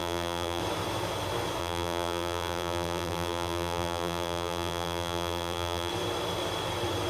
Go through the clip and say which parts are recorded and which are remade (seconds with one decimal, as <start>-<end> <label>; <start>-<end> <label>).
0.0-0.6 remade; 0.6-1.6 recorded; 1.6-5.9 remade; 5.9-7.1 recorded